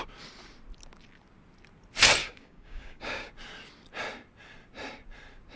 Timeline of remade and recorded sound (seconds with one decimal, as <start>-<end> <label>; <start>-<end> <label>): 0.0-2.2 recorded; 2.2-3.3 remade; 3.3-5.6 recorded